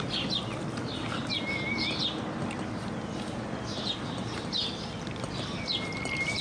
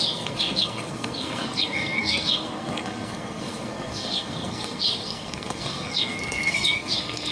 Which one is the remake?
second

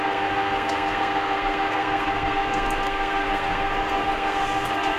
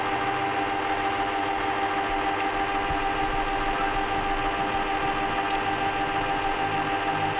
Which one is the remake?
first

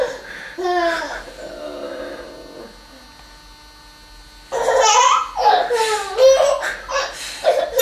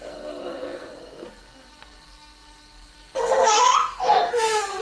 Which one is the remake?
second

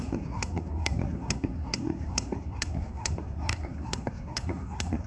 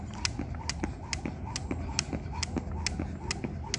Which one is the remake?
first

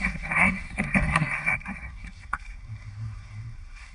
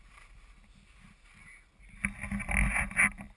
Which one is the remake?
first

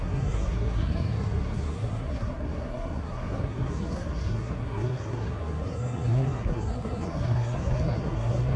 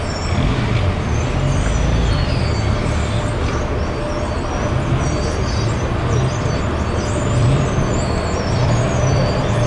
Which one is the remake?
first